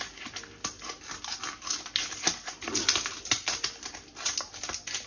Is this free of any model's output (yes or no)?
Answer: yes